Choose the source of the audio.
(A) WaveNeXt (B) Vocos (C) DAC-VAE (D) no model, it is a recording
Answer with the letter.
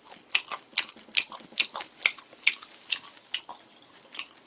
D